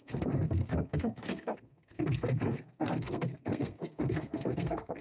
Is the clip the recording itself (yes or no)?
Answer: no